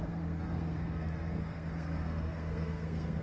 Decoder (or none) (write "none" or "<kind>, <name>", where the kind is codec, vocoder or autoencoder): codec, SNAC